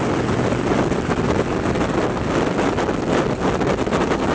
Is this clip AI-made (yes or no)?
no